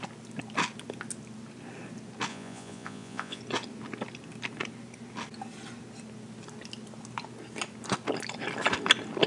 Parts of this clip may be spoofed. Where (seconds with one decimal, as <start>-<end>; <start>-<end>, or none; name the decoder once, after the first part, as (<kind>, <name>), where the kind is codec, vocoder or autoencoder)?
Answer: 2.3-3.4 (vocoder, Vocos)